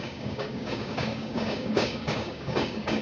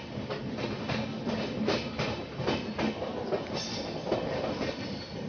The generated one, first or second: first